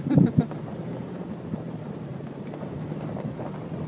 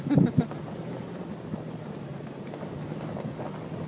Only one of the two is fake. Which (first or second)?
first